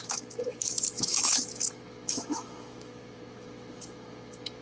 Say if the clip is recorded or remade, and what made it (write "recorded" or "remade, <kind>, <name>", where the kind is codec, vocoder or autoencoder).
remade, autoencoder, DAC-VAE